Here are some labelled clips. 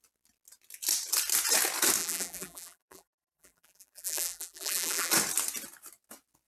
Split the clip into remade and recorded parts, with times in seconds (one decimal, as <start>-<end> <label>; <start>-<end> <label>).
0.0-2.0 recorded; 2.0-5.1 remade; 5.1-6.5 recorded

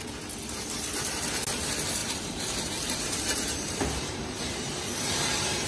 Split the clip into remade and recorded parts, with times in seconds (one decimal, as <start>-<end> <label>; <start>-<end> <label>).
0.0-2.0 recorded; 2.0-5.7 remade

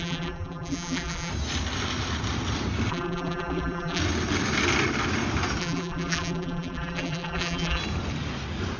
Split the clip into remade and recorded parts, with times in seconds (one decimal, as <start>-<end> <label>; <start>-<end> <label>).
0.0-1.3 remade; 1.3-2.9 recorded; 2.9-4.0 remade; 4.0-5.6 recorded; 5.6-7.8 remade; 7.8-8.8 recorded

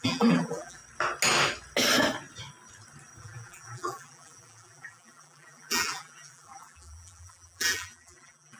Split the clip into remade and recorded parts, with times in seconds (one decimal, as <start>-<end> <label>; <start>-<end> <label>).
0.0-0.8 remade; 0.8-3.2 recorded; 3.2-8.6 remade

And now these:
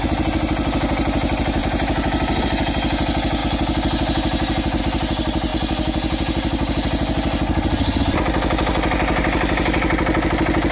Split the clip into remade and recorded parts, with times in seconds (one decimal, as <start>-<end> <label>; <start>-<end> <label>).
0.0-1.6 recorded; 1.6-2.4 remade; 2.4-10.7 recorded

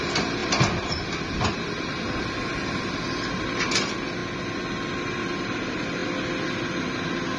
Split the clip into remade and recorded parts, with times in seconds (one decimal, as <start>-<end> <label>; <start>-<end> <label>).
0.0-7.4 recorded

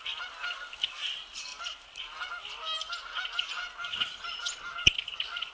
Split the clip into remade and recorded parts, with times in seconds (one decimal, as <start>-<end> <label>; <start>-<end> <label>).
0.0-5.5 recorded